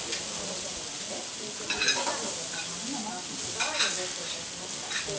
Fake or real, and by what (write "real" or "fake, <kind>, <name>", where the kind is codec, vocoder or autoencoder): real